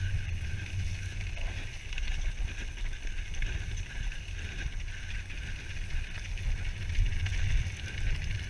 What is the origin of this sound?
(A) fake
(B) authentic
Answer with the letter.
B